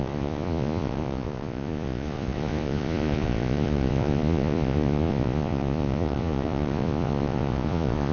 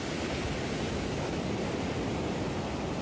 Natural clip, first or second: second